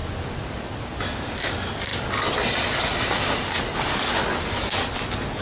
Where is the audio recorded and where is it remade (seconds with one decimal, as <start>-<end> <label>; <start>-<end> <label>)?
0.0-5.4 recorded